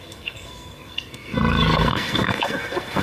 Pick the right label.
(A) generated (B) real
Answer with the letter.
A